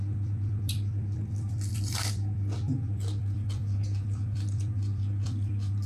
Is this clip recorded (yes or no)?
no